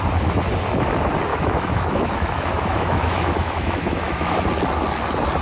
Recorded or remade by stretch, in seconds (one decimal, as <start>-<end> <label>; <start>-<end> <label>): 0.0-1.3 recorded; 1.3-4.4 remade; 4.4-5.4 recorded